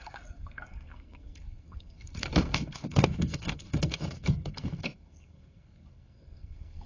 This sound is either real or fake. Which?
fake